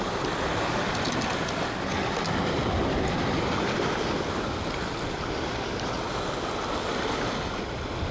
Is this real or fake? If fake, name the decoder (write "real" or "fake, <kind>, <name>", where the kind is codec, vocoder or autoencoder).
real